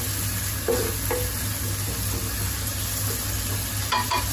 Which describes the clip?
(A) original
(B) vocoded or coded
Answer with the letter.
A